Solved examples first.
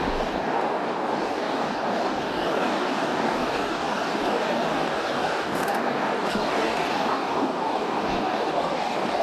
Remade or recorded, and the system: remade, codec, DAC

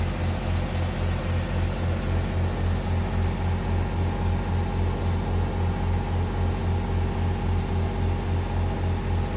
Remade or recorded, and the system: recorded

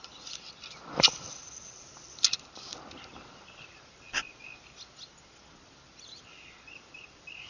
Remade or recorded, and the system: recorded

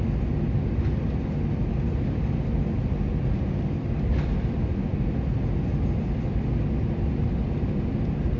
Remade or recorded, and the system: recorded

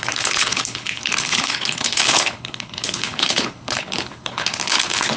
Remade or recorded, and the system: remade, codec, HILCodec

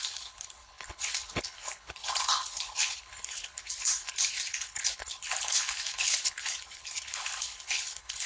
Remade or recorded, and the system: remade, codec, HILCodec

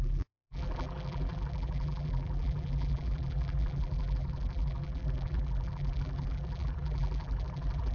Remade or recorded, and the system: remade, vocoder, BigVGAN v2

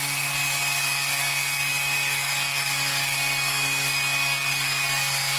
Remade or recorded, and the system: remade, codec, DAC